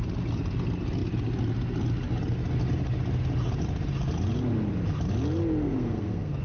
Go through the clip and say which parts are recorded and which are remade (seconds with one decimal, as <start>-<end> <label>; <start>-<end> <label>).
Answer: 0.0-5.6 recorded; 5.6-6.4 remade